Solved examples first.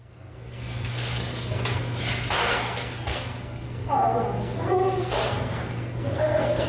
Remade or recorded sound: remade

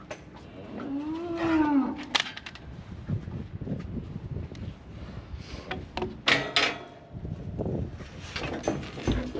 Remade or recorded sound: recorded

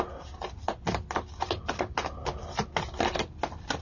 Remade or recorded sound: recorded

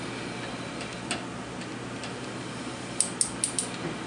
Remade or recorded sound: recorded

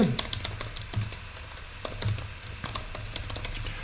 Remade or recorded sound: recorded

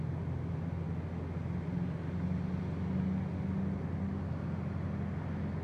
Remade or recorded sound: recorded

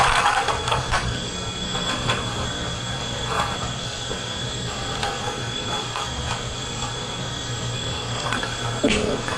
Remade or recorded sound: remade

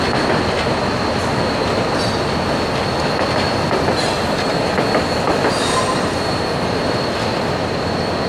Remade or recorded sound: recorded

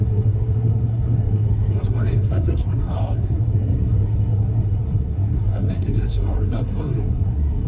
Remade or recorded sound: remade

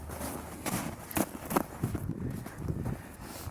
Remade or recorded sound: recorded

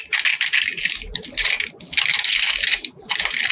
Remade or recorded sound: recorded